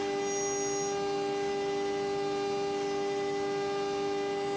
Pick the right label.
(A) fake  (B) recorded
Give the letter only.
B